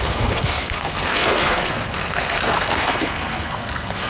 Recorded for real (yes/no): no